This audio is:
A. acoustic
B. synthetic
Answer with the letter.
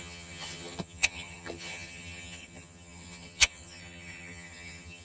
B